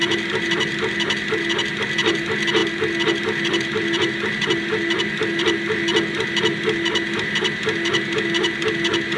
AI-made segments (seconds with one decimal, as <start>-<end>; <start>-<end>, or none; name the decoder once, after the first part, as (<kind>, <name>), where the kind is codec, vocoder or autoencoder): none